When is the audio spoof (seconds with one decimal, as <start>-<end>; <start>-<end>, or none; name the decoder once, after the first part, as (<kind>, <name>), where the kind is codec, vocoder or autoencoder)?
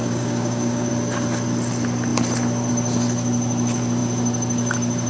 0.0-0.9 (codec, DAC)